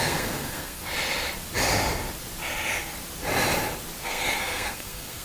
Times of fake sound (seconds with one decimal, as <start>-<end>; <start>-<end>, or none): 0.0-0.9; 4.0-5.2